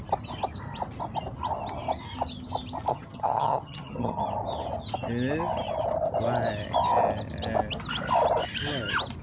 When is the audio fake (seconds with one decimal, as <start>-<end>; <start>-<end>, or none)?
2.9-4.2